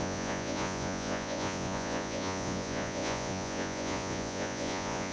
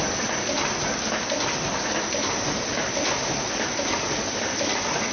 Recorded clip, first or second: second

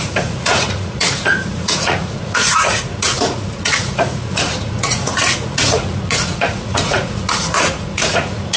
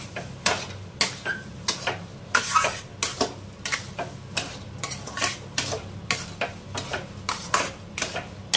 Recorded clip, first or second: second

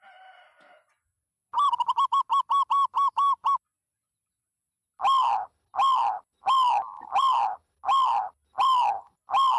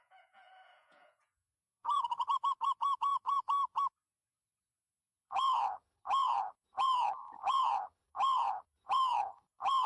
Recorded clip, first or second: first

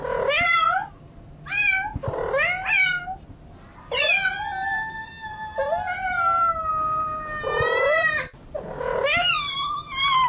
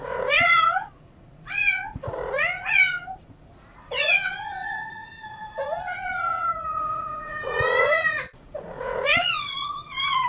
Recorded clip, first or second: first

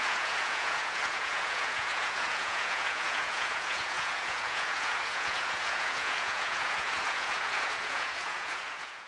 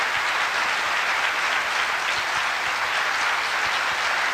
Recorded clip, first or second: second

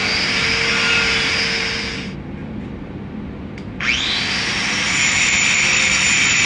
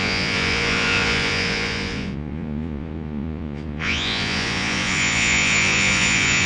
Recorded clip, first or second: first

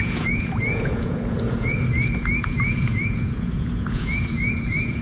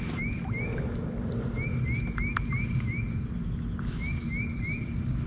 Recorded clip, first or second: second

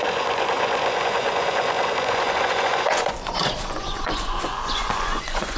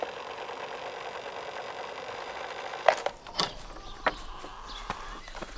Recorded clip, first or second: second